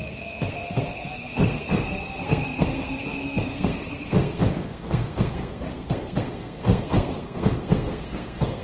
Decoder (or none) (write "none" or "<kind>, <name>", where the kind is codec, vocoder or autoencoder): codec, SNAC